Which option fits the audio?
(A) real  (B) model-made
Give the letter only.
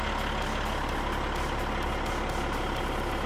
A